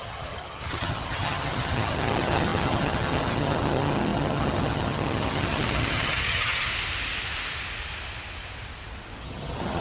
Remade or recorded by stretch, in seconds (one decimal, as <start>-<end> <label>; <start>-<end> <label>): 0.0-6.7 remade; 6.7-9.2 recorded; 9.2-9.8 remade